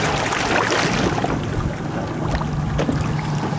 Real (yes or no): yes